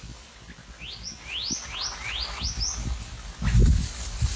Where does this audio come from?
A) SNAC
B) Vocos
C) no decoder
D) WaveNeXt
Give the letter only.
C